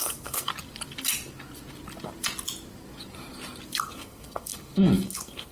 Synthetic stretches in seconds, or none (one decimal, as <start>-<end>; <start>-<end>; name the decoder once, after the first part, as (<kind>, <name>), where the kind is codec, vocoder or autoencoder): 0.0-0.5 (codec, SNAC); 3.8-5.5